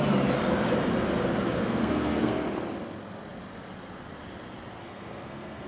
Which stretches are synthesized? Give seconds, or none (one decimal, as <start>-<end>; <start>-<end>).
1.6-2.3; 4.8-5.7